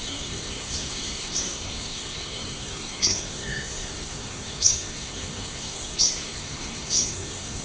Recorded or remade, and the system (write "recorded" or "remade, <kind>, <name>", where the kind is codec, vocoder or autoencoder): remade, codec, SNAC